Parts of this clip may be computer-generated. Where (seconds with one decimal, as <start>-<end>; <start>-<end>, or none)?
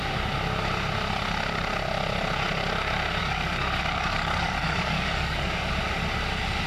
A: 3.2-5.7